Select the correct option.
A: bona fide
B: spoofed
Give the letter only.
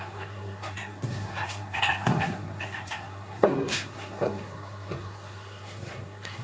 B